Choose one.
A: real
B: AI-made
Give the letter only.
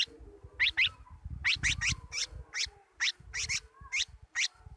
A